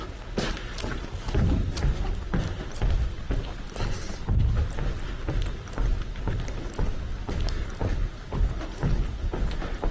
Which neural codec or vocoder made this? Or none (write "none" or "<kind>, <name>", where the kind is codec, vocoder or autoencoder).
none